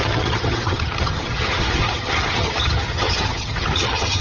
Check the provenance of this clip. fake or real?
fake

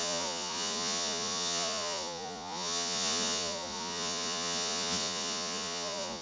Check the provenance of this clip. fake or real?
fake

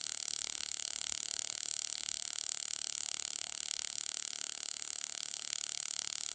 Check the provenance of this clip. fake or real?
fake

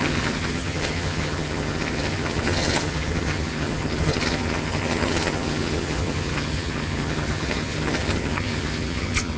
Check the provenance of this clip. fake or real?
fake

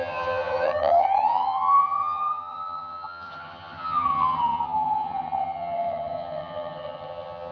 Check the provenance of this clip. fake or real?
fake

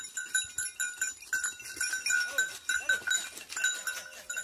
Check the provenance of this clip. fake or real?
real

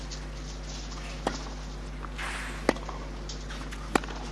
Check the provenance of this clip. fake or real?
real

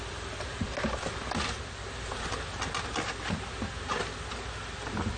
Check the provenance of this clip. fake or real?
real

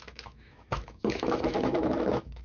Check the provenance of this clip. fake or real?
fake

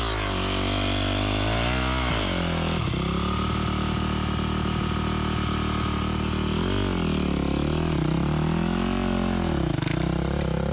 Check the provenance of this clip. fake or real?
real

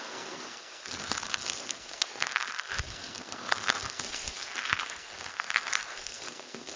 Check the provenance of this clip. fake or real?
fake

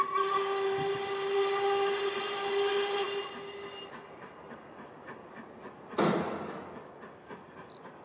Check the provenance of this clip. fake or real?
real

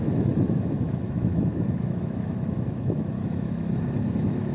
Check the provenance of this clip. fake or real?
fake